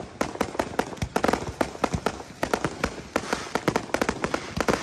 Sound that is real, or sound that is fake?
real